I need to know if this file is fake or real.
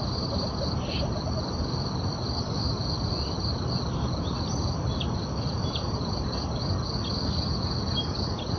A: real